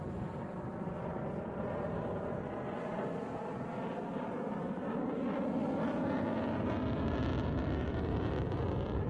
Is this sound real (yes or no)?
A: yes